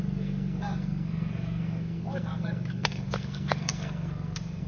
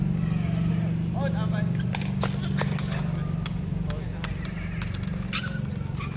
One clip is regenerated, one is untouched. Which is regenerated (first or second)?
first